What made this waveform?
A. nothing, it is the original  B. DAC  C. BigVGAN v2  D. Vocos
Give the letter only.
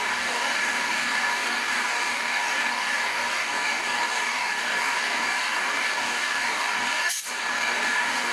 B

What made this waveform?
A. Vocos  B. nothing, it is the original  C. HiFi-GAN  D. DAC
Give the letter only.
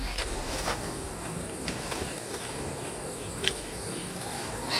D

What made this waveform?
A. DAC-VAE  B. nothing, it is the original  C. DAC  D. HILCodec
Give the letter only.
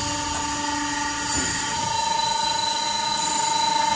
B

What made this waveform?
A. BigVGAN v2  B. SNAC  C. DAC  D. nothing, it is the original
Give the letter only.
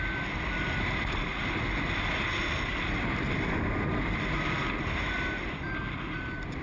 D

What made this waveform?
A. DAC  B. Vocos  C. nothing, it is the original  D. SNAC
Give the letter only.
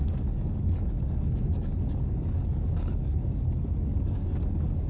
A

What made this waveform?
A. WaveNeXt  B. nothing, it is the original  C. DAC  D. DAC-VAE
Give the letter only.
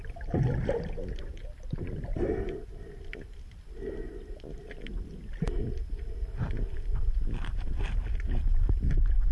B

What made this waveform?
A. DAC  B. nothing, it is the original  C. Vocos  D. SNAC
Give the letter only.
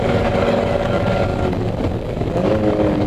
A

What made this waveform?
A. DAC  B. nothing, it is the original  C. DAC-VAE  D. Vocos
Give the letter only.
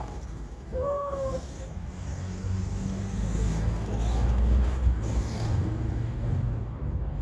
A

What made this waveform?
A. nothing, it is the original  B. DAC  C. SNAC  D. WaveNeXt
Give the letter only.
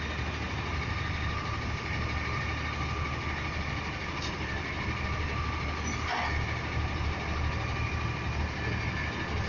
A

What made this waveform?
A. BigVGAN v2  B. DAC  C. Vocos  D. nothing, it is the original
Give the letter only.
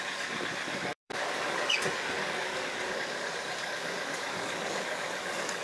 B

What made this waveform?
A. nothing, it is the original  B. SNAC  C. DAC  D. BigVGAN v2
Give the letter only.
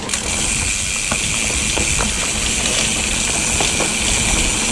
A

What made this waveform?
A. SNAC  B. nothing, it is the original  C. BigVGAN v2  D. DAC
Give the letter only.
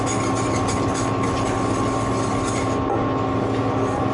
B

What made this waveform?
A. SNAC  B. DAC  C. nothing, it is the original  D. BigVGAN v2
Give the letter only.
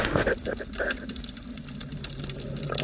C